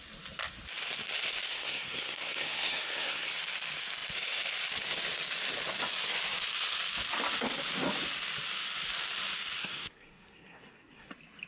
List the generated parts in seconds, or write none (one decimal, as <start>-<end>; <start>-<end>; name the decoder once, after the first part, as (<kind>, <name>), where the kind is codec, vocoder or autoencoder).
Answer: 1.5-3.3 (codec, SNAC); 9.6-11.1